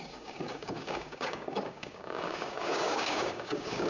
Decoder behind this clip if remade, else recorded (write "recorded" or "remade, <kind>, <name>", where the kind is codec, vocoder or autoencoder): remade, codec, DAC